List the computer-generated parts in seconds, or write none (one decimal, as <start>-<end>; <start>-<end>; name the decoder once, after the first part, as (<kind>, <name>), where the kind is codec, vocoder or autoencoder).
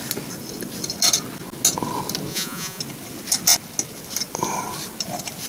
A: 2.3-2.8 (vocoder, Vocos)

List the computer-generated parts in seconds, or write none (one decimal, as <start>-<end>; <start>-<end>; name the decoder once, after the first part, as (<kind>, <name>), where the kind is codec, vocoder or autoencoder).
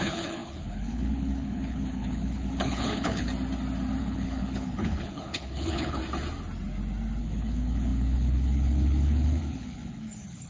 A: 0.0-3.3 (codec, HILCodec); 4.0-6.0; 7.2-10.5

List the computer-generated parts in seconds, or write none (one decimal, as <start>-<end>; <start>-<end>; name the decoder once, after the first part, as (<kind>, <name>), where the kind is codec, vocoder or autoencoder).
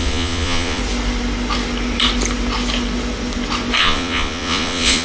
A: 0.0-0.8 (vocoder, Vocos); 3.8-5.0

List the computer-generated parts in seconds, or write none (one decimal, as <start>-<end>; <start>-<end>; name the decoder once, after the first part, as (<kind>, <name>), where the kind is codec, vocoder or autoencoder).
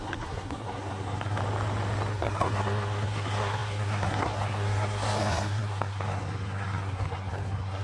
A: 0.0-1.4 (codec, SNAC); 2.1-7.8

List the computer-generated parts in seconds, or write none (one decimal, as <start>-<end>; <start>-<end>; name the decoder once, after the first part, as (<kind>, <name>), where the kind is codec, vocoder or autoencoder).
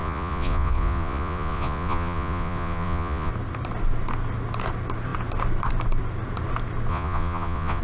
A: 0.0-3.3 (vocoder, Vocos); 6.9-7.8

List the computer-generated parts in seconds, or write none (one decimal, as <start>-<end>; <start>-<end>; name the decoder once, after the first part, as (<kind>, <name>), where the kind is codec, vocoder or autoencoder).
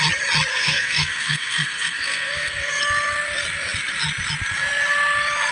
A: 0.5-2.8 (codec, SNAC)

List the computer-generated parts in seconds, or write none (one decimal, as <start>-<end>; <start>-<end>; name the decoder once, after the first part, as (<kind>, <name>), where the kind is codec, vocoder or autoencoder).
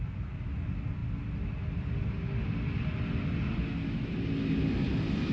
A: none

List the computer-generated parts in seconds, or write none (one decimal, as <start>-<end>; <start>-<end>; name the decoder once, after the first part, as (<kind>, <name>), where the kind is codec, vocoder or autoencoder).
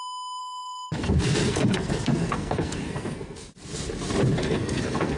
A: 0.4-3.5 (codec, SNAC); 4.4-5.2